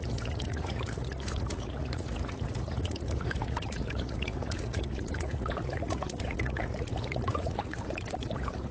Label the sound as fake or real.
fake